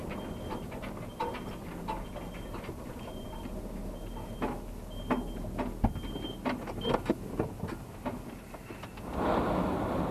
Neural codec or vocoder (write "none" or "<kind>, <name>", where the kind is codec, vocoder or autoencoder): none